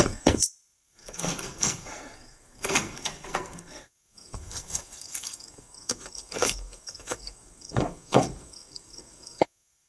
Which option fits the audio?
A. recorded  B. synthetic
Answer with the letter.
B